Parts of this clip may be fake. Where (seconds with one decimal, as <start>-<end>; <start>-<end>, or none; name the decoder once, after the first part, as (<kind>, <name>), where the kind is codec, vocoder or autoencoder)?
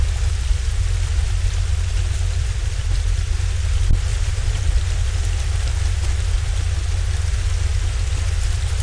2.6-3.4 (vocoder, BigVGAN v2); 4.1-4.6